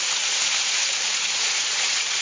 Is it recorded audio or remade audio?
remade